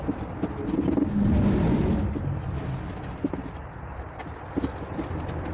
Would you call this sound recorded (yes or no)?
yes